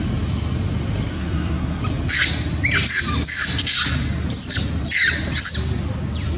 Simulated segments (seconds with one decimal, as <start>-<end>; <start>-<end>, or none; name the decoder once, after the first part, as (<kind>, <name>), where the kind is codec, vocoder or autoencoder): 1.1-1.8 (codec, SNAC)